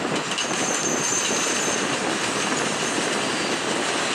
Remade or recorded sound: recorded